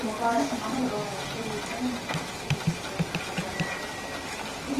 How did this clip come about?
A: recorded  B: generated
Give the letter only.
A